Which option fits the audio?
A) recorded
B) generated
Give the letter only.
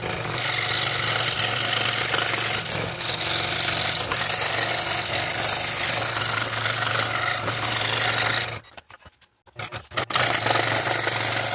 A